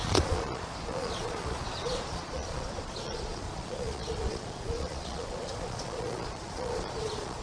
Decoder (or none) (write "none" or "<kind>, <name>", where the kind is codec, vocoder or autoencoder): vocoder, Vocos